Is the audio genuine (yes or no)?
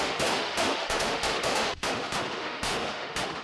no